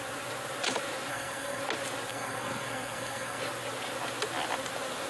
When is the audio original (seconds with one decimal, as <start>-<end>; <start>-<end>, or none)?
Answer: 0.0-1.1; 1.6-2.1; 3.4-5.1

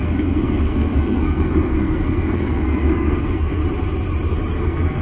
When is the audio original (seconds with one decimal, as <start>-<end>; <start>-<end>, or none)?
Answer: 3.6-4.6

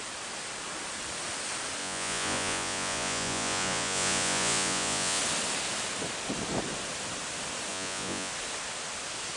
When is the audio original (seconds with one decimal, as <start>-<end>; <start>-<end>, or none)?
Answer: 0.0-1.8; 5.2-7.7; 8.3-9.4

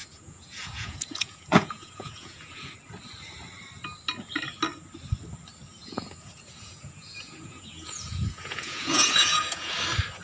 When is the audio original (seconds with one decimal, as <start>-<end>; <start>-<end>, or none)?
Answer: 2.7-5.8; 9.7-10.2

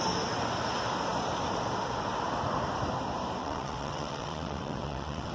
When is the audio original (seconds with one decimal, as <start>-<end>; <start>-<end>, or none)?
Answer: 0.0-3.4

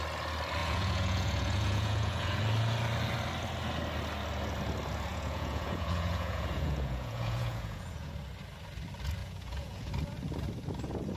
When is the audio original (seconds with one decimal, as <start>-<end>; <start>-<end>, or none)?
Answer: 0.0-0.6; 2.4-5.1; 8.1-9.2; 9.9-11.2